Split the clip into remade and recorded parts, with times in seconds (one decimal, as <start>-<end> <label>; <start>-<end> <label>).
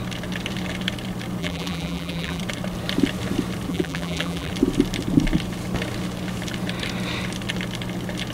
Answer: 0.0-1.4 recorded; 1.4-2.4 remade; 2.4-3.7 recorded; 3.7-4.5 remade; 4.5-8.3 recorded